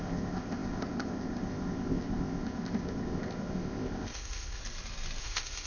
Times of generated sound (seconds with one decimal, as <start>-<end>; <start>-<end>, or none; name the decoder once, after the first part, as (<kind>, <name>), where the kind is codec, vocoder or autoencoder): 0.0-4.6 (codec, ZipCodec); 5.2-5.7